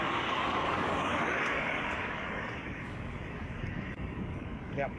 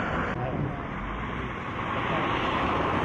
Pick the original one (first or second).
second